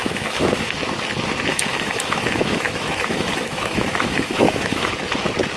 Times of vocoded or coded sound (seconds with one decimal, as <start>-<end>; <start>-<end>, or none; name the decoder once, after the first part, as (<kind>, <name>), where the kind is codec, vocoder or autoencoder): 0.0-0.7 (autoencoder, DAC-VAE); 1.5-4.9